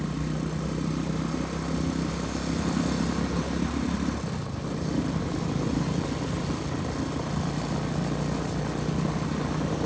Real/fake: real